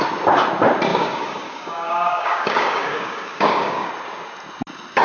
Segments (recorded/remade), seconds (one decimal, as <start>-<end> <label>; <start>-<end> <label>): 0.0-0.9 recorded; 0.9-3.9 remade; 3.9-5.0 recorded